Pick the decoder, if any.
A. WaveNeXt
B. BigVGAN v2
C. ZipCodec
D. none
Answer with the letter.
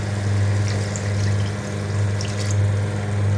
D